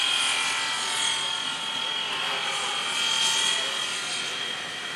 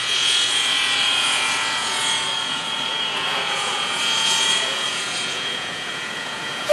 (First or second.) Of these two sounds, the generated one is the second